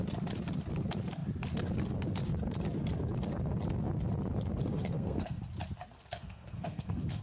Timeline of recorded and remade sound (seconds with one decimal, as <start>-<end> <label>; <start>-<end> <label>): 0.0-4.6 recorded; 4.6-5.4 remade; 5.4-6.2 recorded; 6.2-7.2 remade